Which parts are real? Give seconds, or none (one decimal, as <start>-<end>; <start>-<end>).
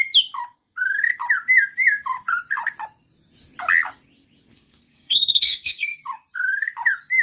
0.0-4.5; 6.0-7.2